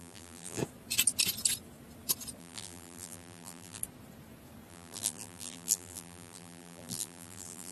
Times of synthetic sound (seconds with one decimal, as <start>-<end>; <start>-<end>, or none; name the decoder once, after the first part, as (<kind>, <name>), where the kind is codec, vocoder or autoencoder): 0.0-0.6 (vocoder, BigVGAN v2); 2.4-3.8; 4.7-7.7